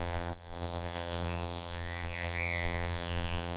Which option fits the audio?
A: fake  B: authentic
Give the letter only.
A